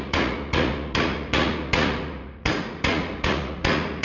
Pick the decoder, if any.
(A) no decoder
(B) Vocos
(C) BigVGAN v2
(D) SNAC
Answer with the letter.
B